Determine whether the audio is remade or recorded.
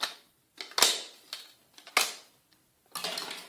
recorded